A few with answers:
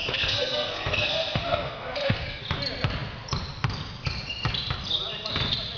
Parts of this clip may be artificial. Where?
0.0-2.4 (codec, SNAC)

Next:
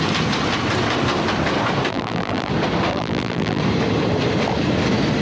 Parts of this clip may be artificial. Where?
1.9-2.5 (vocoder, BigVGAN v2); 2.9-3.6

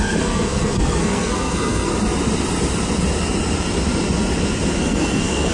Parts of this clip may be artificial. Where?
0.0-1.9 (codec, SNAC); 4.8-5.5